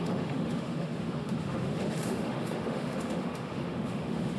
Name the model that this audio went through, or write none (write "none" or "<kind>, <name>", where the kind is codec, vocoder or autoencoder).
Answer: autoencoder, DAC-VAE